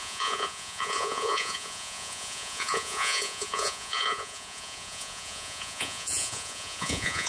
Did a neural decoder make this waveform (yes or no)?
yes